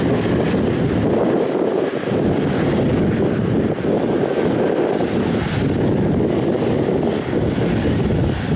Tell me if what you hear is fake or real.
real